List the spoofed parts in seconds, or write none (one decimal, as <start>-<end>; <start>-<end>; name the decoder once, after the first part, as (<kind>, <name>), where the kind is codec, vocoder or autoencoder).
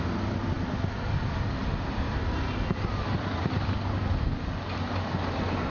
none